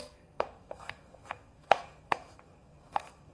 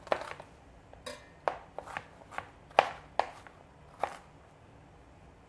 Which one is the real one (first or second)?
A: second